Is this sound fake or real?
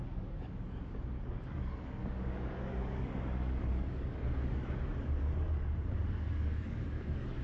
fake